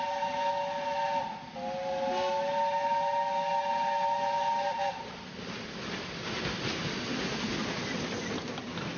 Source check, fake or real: real